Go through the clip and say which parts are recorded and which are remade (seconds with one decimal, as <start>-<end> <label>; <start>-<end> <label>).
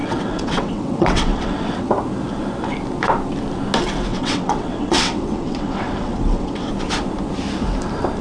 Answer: 0.0-1.9 remade; 1.9-4.1 recorded; 4.1-6.7 remade; 6.7-8.2 recorded